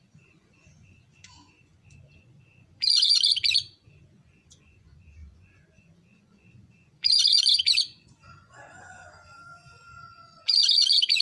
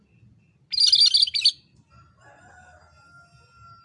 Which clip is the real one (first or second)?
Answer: second